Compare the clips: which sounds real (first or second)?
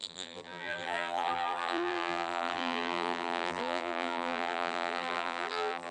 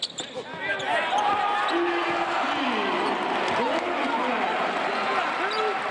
second